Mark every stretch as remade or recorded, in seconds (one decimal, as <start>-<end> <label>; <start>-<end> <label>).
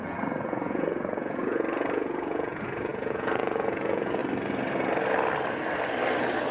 0.0-4.2 remade; 4.2-6.5 recorded